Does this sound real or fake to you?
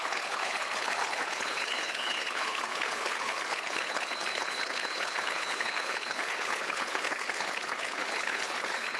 fake